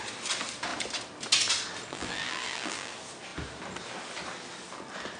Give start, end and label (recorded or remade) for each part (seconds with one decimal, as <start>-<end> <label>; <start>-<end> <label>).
0.0-1.9 recorded; 1.9-2.9 remade; 2.9-5.2 recorded